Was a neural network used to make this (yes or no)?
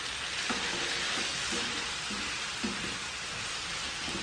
no